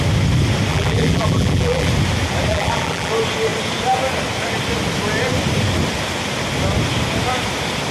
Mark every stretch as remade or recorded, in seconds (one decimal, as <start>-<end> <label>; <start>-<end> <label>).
0.0-0.7 recorded; 0.7-1.9 remade; 1.9-2.5 recorded; 2.5-3.1 remade; 3.1-7.9 recorded